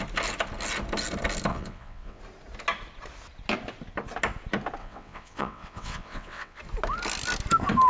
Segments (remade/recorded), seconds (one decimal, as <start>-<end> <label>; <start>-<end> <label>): 0.0-1.5 recorded; 1.5-2.2 remade; 2.2-4.8 recorded; 4.8-6.6 remade; 6.6-7.9 recorded